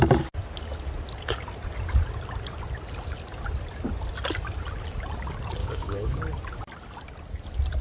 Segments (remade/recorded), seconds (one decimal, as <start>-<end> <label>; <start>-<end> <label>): 0.0-5.6 recorded; 5.6-6.2 remade; 6.2-7.8 recorded